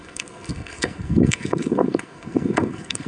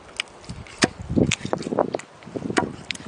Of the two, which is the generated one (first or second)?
first